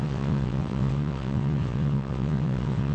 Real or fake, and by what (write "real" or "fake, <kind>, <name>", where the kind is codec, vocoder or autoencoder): fake, vocoder, WaveNeXt